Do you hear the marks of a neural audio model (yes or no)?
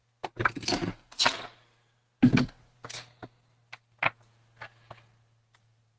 no